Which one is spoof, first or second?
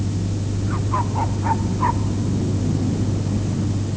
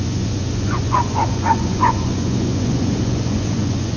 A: second